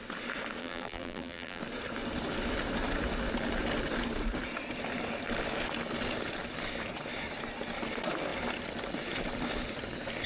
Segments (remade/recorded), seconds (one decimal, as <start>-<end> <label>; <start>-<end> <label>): 0.0-0.6 recorded; 0.6-1.6 remade; 1.6-10.3 recorded